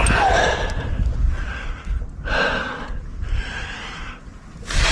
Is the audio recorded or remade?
recorded